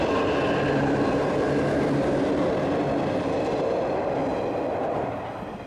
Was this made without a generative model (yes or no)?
yes